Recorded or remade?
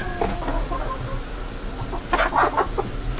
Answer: recorded